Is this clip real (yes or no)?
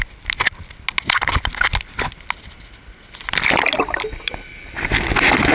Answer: yes